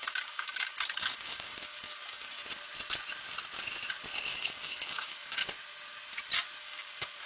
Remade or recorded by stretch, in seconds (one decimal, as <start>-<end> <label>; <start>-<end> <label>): 0.0-2.4 remade; 2.4-4.1 recorded; 4.1-5.4 remade; 5.4-6.6 recorded; 6.6-7.3 remade